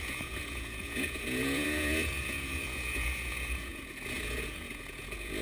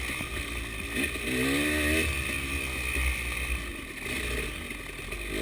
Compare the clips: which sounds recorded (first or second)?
second